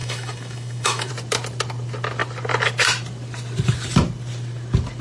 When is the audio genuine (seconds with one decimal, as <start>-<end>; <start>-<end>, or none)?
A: 1.1-5.0